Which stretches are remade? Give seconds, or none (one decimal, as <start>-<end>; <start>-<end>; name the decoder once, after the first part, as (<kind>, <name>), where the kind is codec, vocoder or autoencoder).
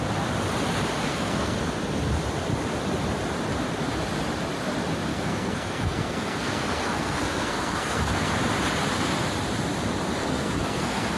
1.1-1.6 (codec, SNAC); 5.1-8.3; 10.2-11.2